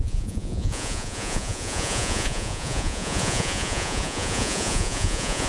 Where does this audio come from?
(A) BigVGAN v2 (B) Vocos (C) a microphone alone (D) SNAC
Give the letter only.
B